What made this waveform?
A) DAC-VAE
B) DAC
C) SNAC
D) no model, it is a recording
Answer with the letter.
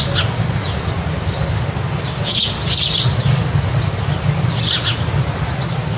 D